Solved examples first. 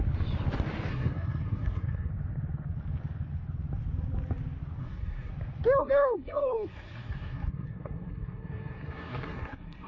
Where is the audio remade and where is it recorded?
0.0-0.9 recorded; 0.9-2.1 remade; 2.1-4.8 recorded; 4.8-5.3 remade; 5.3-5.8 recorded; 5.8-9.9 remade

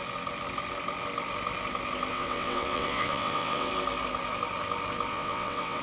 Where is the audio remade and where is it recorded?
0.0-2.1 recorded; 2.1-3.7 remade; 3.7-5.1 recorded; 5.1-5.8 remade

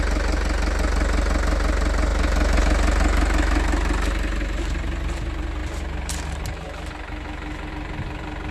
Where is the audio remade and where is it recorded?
0.0-8.5 recorded